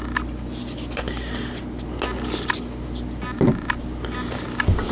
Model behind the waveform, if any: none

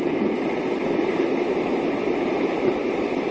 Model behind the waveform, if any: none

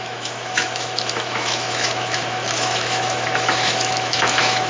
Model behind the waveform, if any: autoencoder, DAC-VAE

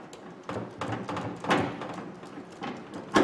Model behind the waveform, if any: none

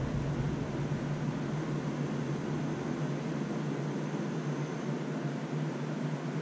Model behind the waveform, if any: none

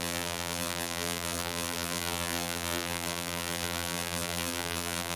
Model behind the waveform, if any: vocoder, BigVGAN v2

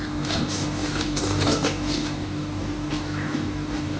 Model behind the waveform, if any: codec, DAC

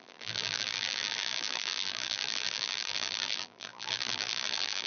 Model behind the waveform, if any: vocoder, BigVGAN v2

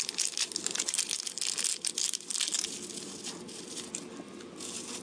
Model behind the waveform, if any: none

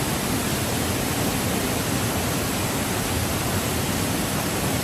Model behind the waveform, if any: none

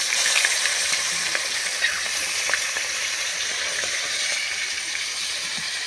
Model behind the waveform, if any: vocoder, BigVGAN v2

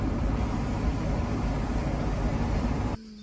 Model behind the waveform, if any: none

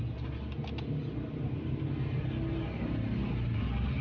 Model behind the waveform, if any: none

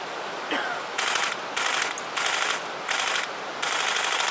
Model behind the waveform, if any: none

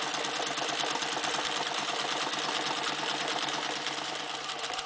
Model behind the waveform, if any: none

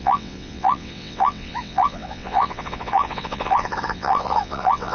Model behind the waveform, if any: vocoder, WaveNeXt